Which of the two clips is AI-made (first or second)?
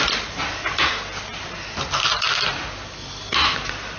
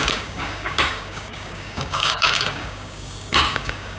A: second